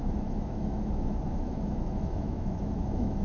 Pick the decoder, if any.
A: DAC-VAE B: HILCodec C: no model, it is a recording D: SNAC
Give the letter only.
A